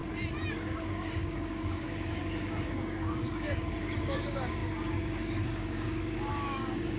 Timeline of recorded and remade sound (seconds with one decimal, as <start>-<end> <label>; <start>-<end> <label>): 0.0-0.5 recorded; 0.5-7.0 remade